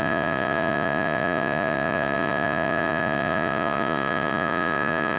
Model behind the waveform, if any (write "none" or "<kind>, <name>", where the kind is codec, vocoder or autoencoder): vocoder, Vocos